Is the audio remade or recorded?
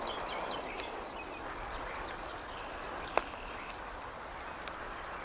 recorded